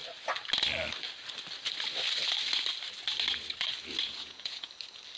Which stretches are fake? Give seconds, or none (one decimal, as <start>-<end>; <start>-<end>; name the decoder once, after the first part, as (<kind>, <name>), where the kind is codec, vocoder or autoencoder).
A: 4.0-4.7 (vocoder, Vocos)